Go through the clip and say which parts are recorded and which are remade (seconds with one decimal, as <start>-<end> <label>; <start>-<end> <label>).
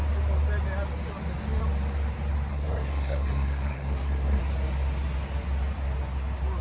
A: 0.0-2.5 recorded; 2.5-4.4 remade; 4.4-6.6 recorded